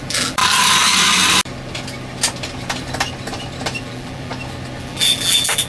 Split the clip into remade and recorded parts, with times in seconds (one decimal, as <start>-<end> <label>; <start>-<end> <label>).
0.0-0.4 remade; 0.4-3.8 recorded; 3.8-4.3 remade; 4.3-4.8 recorded; 4.8-5.7 remade